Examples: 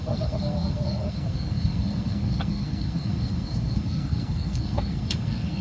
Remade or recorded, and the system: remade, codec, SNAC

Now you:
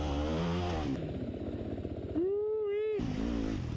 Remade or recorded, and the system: recorded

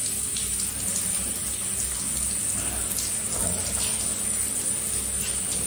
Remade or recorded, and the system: recorded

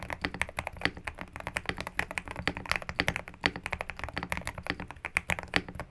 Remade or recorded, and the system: recorded